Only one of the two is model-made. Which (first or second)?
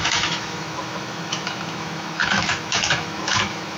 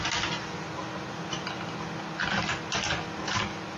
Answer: first